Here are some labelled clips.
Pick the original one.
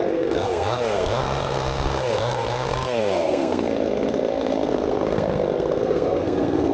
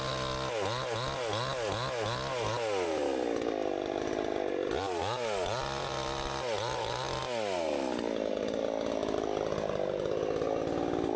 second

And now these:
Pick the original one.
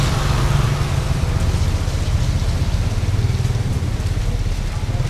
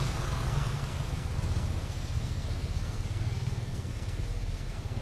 first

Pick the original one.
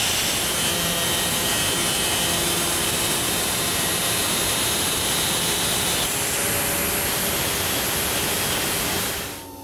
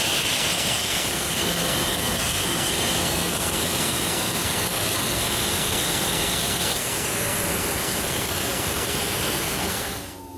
first